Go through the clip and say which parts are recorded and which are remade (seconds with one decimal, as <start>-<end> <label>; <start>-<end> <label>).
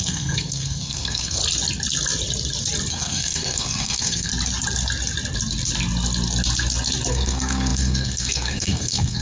0.0-1.4 remade; 1.4-2.9 recorded; 2.9-4.3 remade; 4.3-7.1 recorded; 7.1-9.2 remade